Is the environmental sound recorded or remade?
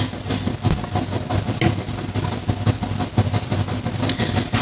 recorded